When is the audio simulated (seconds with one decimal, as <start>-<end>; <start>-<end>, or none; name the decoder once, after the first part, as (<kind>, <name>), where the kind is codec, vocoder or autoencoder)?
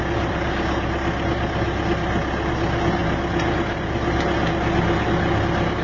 none